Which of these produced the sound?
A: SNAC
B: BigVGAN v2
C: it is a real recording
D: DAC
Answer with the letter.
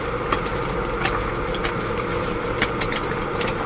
B